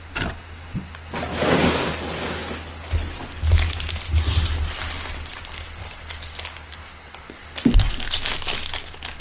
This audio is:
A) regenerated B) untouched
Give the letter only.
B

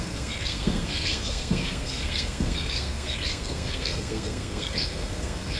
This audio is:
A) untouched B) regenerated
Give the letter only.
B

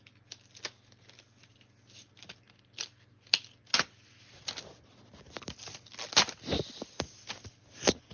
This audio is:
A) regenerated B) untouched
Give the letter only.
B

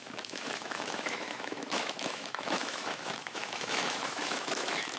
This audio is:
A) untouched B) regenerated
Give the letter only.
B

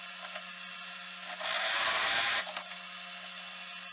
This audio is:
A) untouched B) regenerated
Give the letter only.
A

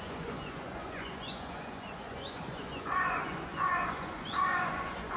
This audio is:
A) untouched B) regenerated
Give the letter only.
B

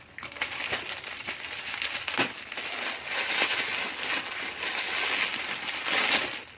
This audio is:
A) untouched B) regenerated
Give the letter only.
A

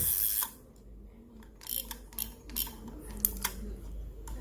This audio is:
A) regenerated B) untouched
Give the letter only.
B